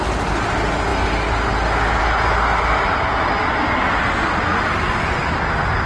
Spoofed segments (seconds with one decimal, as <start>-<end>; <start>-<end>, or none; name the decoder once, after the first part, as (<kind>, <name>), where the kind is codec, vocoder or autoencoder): none